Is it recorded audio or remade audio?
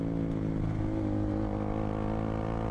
recorded